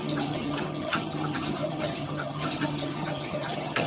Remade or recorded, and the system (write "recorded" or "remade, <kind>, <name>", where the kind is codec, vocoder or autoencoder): remade, vocoder, HiFi-GAN